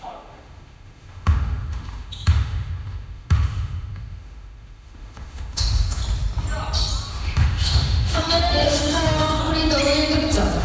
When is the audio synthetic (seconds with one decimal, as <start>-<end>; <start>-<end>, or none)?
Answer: 0.0-6.0; 7.1-9.4